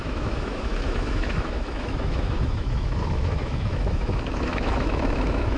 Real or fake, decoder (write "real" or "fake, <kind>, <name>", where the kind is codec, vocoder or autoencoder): fake, autoencoder, DAC-VAE